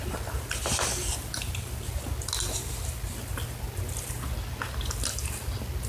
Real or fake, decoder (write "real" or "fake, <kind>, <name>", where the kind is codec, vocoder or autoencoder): real